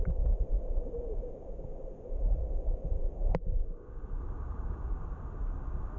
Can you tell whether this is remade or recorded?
recorded